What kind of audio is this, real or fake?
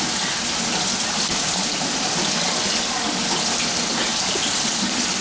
real